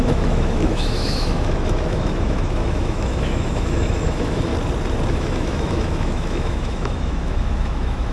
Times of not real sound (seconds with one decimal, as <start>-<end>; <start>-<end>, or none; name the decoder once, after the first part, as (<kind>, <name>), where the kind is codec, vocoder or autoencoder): 0.0-4.5 (autoencoder, DAC-VAE); 5.1-8.1